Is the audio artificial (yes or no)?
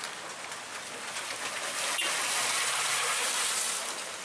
no